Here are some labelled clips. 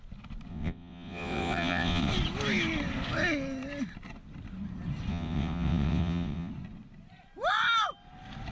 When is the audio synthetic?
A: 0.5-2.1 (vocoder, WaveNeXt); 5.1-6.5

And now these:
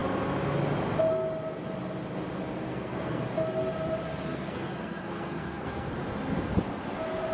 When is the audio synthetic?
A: 2.7-3.2 (codec, SNAC); 4.3-5.9

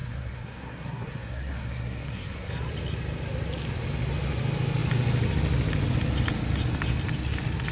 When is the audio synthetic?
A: 0.0-2.5 (codec, SNAC)

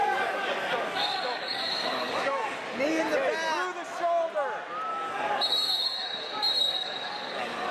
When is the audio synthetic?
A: 0.0-3.0 (codec, DAC); 4.9-7.7

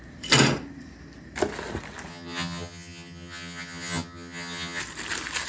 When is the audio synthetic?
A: 2.1-4.8 (vocoder, HiFi-GAN)

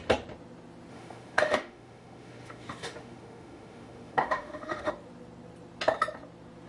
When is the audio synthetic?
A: 0.9-4.9 (autoencoder, DAC-VAE)